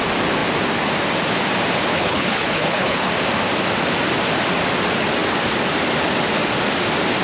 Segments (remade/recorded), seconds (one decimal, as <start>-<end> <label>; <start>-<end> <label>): 0.0-1.9 recorded; 1.9-3.1 remade; 3.1-7.2 recorded